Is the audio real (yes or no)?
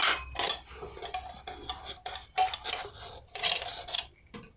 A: yes